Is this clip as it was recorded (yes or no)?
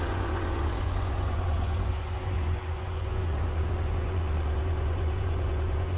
no